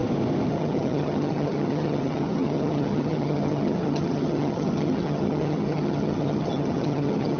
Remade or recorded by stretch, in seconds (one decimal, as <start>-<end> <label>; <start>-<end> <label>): 0.0-0.5 recorded; 0.5-7.4 remade